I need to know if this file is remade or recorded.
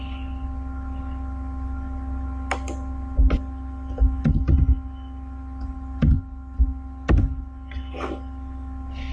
recorded